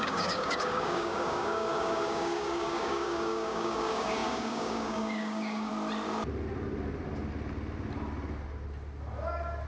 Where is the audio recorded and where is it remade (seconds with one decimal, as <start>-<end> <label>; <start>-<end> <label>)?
0.0-5.7 remade; 5.7-9.7 recorded